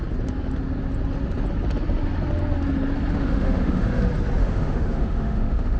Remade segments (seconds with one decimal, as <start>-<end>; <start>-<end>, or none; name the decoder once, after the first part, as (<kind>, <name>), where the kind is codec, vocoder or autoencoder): 3.1-4.0 (autoencoder, DAC-VAE); 4.4-5.8